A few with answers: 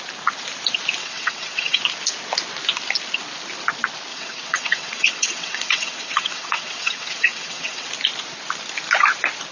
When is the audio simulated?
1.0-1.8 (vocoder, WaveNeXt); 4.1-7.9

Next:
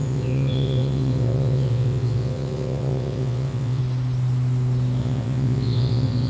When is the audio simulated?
0.0-3.8 (vocoder, WaveNeXt); 5.0-6.3

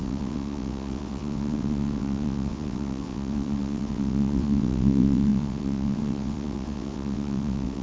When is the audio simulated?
0.0-7.8 (vocoder, WaveNeXt)